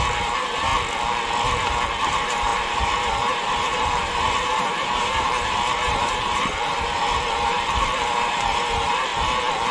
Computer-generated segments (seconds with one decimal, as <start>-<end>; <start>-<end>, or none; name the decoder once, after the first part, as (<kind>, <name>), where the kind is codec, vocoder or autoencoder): 0.0-0.7 (vocoder, BigVGAN v2); 2.0-9.1